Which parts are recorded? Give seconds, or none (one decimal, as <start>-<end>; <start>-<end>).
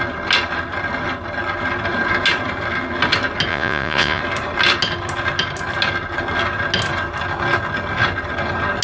0.0-3.5; 4.2-8.8